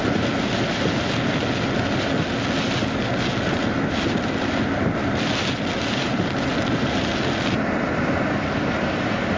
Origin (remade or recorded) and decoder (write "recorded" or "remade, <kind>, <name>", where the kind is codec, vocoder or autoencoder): recorded